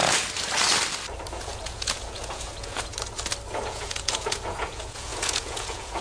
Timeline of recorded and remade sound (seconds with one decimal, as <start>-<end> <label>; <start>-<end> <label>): 0.0-1.4 recorded; 1.4-2.9 remade; 2.9-3.6 recorded; 3.6-6.0 remade